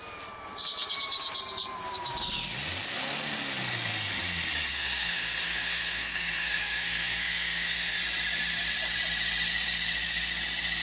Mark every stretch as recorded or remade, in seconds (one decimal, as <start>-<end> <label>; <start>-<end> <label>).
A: 0.0-4.7 recorded; 4.7-8.0 remade; 8.0-10.8 recorded